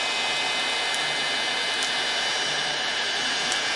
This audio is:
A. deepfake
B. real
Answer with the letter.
B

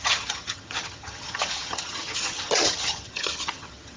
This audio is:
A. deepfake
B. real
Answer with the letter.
A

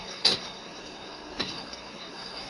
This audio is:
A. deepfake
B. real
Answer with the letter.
A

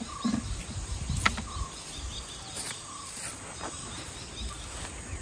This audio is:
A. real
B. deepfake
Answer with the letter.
A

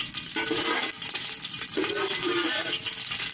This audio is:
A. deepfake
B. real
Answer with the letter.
B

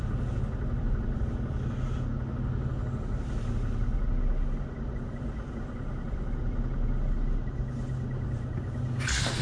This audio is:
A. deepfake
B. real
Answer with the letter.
B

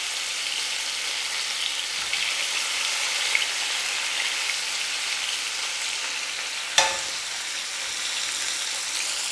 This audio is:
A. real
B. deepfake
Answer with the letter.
A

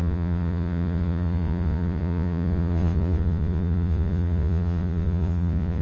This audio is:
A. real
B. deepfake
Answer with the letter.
B